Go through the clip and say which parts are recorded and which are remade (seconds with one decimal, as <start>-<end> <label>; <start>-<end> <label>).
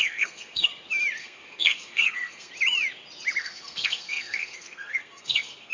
0.0-0.7 remade; 0.7-1.2 recorded; 1.2-2.5 remade; 2.5-3.4 recorded; 3.4-5.7 remade